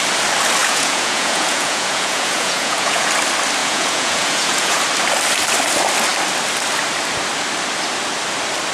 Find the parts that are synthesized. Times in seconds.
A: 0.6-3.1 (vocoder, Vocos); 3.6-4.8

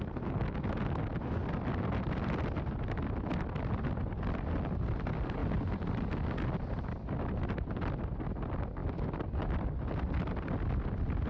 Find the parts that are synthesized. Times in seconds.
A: none

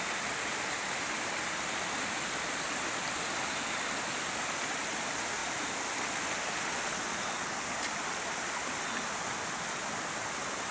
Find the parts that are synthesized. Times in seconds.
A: none

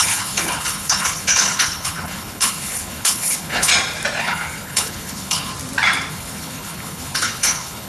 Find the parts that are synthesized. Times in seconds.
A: 0.0-3.7 (codec, HILCodec); 4.2-5.5; 6.1-7.9

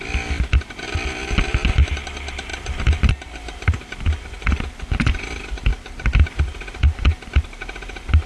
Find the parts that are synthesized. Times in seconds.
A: none

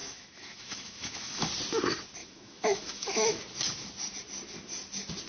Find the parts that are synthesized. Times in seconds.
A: 0.0-1.5 (autoencoder, DAC-VAE); 2.2-3.4

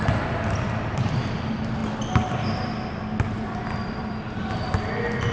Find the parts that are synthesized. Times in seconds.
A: none